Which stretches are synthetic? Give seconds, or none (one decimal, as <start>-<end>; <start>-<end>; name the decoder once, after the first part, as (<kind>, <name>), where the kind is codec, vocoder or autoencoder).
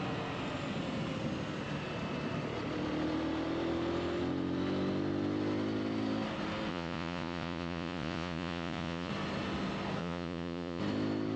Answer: 6.7-9.1 (vocoder, Vocos); 10.0-10.8